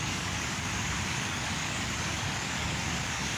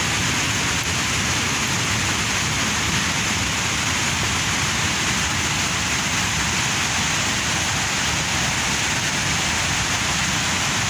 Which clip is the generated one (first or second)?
first